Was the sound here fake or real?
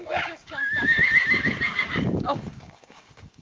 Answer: fake